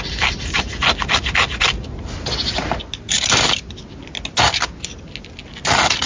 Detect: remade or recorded recorded